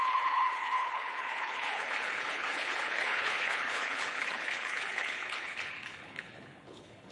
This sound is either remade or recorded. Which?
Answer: remade